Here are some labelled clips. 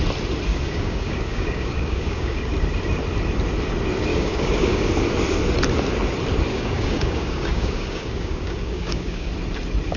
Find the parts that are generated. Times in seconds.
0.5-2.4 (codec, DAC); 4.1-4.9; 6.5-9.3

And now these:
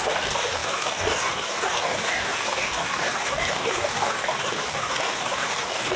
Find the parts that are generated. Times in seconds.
0.0-6.0 (codec, DAC)

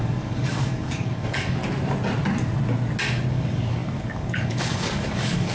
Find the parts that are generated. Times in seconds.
0.0-1.6 (codec, DAC); 3.3-5.5